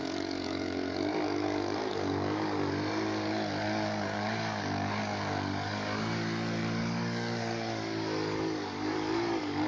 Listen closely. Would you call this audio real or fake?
fake